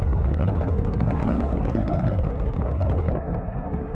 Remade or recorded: remade